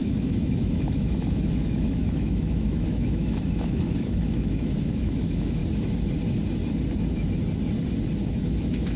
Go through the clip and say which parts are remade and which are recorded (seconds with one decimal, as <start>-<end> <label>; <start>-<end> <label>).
0.0-5.6 remade; 5.6-8.3 recorded; 8.3-9.0 remade